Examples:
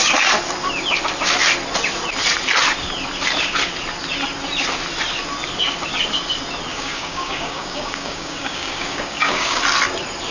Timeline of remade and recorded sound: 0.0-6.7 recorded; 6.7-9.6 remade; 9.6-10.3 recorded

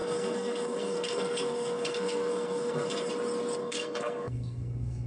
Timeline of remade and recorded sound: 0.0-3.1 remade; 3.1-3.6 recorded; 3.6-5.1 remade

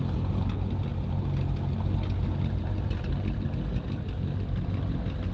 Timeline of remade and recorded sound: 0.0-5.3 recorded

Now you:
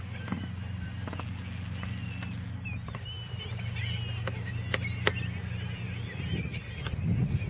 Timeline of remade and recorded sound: 0.0-2.7 recorded; 2.7-3.4 remade; 3.4-7.5 recorded

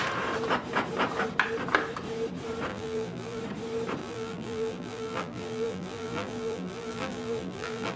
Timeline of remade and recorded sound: 0.0-2.7 recorded; 2.7-3.4 remade; 3.4-4.0 recorded; 4.0-8.0 remade